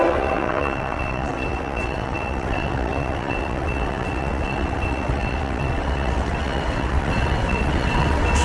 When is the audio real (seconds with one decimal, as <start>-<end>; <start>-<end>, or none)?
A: none